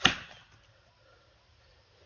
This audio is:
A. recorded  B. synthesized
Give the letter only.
A